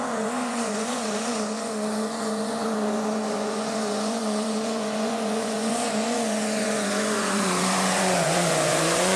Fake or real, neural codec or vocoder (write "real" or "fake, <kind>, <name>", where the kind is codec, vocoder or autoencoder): fake, vocoder, Vocos